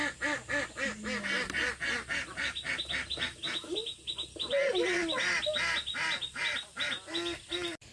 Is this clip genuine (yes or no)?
yes